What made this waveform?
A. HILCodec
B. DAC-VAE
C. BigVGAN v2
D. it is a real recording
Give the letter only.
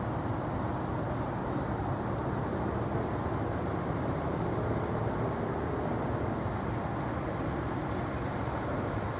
D